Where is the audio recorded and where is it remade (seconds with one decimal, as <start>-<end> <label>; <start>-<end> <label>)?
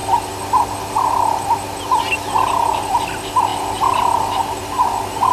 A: 0.0-5.3 recorded